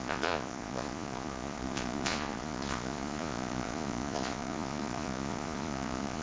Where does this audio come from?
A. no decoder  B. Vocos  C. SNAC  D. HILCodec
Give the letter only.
B